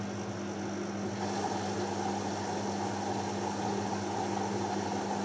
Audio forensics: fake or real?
real